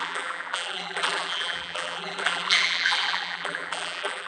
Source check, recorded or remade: remade